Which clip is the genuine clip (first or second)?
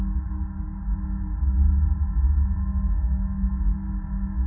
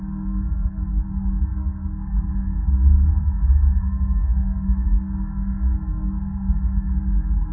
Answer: first